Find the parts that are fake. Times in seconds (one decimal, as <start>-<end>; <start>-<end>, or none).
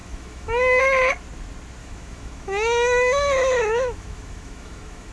0.0-0.8; 1.8-5.1